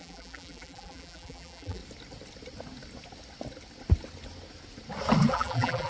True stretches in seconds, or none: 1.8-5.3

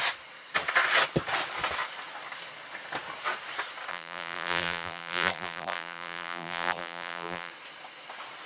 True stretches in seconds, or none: 0.0-3.9; 7.5-8.5

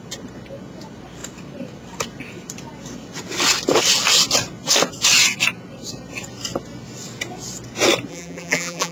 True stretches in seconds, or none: 0.0-8.1

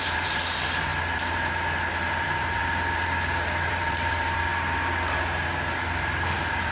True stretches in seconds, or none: 0.9-1.9; 2.6-3.6; 4.5-6.0

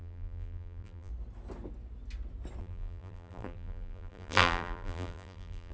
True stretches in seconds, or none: 1.1-2.6

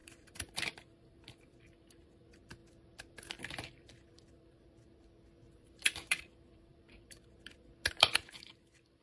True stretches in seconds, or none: 2.6-3.4